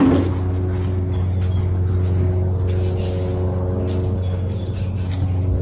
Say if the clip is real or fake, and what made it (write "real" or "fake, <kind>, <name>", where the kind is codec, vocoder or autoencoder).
real